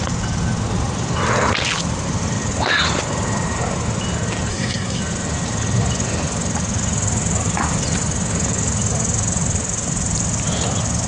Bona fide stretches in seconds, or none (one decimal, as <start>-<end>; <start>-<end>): 0.0-4.5; 5.0-11.1